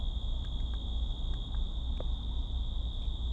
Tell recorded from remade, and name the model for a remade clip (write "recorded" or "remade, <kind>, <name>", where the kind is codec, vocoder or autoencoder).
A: recorded